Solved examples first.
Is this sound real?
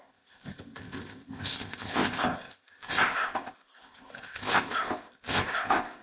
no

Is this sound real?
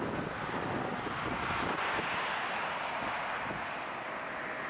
yes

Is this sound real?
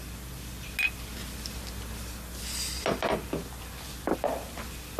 yes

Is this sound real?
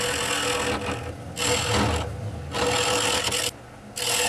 yes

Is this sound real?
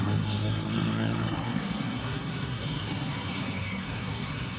no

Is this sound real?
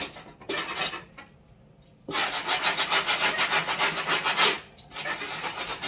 yes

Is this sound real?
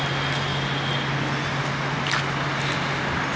yes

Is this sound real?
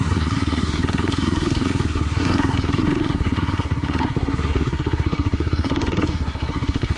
no